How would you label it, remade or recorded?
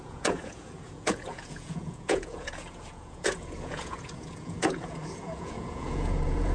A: remade